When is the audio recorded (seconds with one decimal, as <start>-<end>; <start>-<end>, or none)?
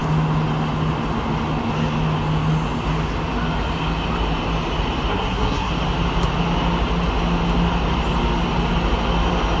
0.0-5.1; 5.7-9.6